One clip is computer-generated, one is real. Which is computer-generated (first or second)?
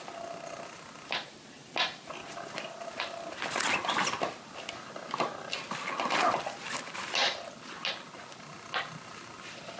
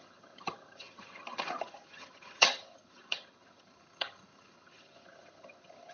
second